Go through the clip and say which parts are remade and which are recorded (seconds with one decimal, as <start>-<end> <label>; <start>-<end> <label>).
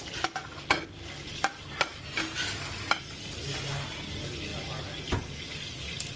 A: 0.0-6.2 recorded